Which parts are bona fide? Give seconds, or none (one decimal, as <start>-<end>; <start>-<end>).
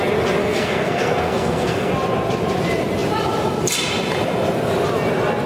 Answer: 0.0-0.4; 1.9-5.5